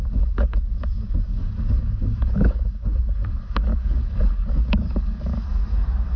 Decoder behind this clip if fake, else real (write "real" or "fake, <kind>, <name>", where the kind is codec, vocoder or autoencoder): fake, codec, DAC